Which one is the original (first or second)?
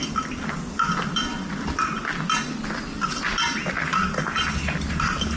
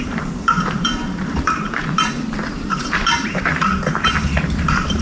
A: first